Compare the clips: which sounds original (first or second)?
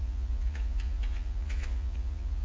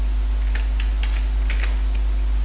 second